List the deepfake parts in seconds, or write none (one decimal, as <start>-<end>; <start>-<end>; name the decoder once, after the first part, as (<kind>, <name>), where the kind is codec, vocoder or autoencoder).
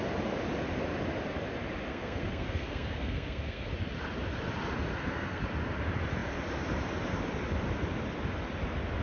1.9-3.7 (codec, SNAC); 4.9-5.4